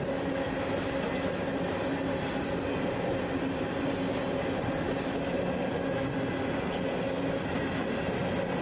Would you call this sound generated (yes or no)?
no